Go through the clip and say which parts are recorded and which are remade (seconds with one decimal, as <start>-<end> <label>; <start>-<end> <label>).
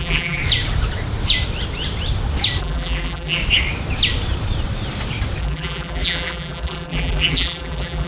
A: 0.0-0.4 remade; 0.4-2.6 recorded; 2.6-3.4 remade; 3.4-5.4 recorded; 5.4-8.1 remade